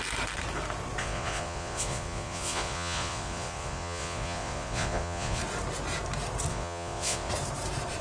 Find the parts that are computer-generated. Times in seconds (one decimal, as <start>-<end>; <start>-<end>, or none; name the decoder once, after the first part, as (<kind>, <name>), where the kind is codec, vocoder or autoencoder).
1.0-5.4 (vocoder, Vocos); 6.5-7.3